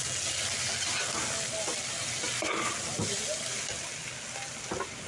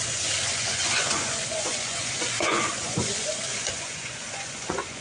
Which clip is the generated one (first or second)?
second